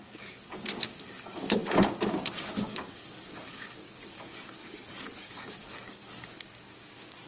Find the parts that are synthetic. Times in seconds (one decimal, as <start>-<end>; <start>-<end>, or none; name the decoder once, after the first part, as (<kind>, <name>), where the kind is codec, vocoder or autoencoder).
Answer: 0.0-4.6 (codec, DAC); 5.2-7.3